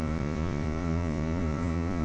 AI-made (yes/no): yes